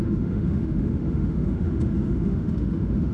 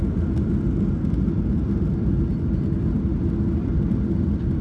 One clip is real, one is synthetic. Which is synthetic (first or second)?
first